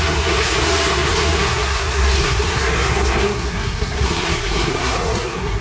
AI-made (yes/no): yes